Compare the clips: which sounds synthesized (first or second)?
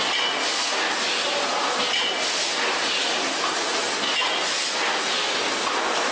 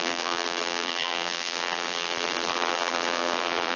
second